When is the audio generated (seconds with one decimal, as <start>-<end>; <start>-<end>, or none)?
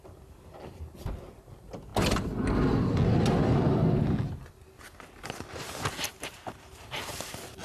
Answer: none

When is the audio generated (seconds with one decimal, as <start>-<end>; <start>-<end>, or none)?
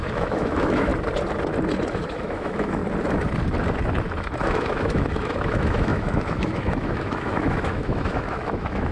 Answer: 0.0-0.9; 1.9-2.8; 4.4-8.9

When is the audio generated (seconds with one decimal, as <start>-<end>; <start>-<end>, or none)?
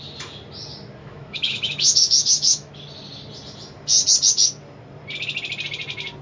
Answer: 1.0-2.7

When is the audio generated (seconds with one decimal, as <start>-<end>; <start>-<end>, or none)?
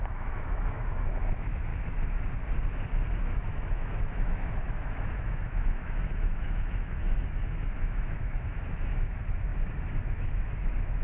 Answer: 0.0-1.7; 3.2-11.0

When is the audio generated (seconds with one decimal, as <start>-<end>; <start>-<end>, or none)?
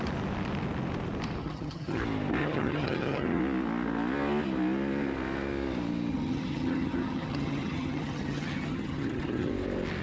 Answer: 1.4-2.0; 2.4-3.4; 6.1-9.5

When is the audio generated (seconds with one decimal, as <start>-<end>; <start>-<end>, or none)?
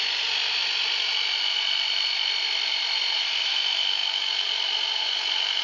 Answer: none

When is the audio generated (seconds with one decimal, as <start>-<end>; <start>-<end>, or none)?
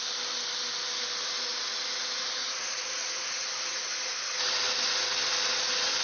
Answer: 2.4-4.3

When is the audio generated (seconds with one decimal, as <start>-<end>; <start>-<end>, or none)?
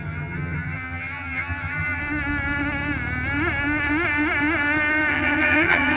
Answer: 0.0-2.0; 5.1-6.0